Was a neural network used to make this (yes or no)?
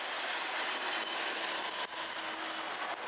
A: no